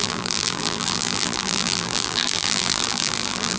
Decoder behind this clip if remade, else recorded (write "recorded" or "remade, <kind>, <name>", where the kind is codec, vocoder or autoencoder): remade, vocoder, BigVGAN v2